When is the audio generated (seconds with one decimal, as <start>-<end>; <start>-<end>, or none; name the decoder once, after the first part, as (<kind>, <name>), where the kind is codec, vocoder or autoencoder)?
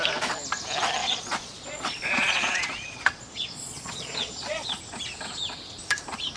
1.0-4.8 (vocoder, Vocos)